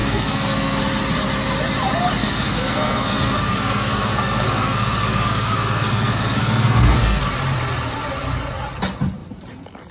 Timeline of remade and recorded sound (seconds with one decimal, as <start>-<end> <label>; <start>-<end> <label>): 0.0-0.8 remade; 0.8-2.2 recorded; 2.2-7.2 remade; 7.2-9.9 recorded